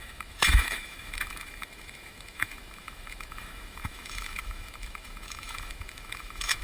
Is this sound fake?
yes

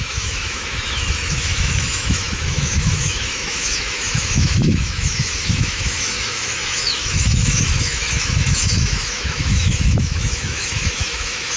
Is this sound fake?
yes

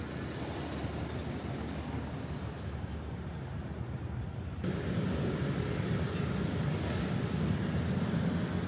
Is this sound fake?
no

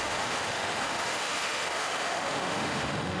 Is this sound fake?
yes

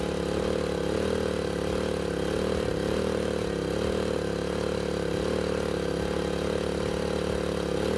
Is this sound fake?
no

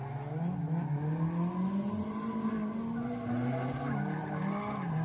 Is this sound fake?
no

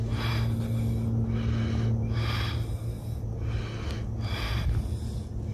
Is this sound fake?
no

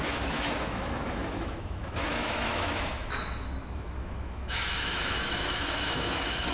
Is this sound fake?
yes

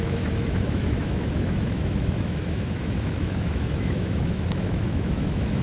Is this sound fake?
yes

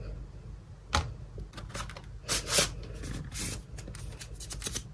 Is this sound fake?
no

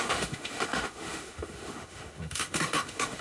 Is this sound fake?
yes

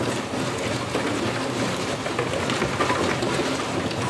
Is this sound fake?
no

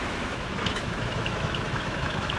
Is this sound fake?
yes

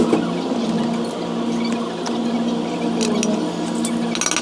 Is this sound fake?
no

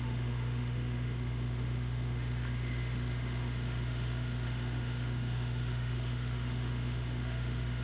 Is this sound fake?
yes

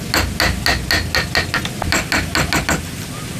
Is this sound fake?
no